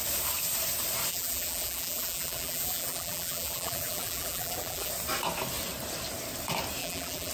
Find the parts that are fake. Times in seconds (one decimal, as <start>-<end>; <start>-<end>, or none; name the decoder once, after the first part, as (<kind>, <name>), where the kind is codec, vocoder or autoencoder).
1.1-4.9 (vocoder, BigVGAN v2); 6.8-7.3